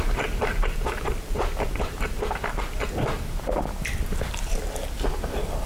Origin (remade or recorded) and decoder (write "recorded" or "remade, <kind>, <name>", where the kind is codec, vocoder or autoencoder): remade, vocoder, BigVGAN v2